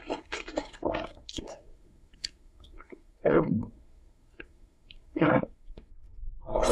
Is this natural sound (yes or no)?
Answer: no